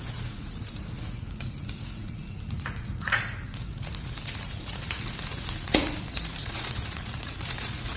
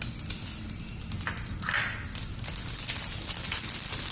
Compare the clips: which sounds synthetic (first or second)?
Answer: first